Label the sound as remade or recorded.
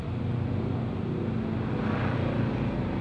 recorded